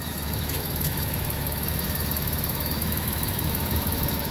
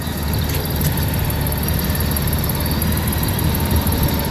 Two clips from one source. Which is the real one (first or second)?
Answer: second